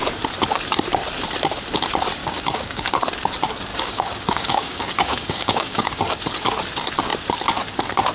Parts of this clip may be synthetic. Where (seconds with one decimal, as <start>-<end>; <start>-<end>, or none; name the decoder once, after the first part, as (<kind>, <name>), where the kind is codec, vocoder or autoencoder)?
2.2-2.9 (codec, DAC); 3.7-6.2